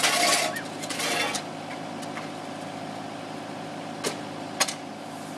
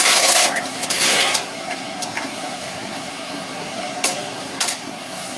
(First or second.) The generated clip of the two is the second